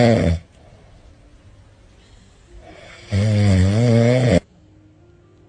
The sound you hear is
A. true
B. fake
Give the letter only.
A